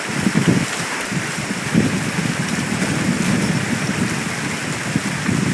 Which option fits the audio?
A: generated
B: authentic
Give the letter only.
B